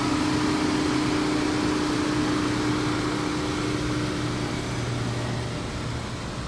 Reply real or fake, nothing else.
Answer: real